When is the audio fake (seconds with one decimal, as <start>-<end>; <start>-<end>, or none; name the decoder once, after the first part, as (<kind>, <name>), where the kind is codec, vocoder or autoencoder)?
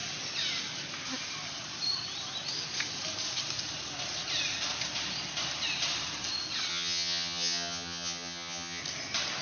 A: 6.7-8.8 (vocoder, HiFi-GAN)